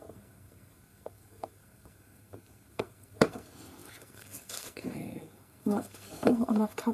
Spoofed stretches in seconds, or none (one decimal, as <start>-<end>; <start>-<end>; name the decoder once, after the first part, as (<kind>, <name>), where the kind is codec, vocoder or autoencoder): 0.0-6.9 (codec, SNAC)